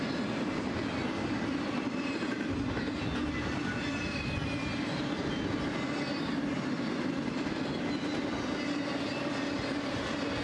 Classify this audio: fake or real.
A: real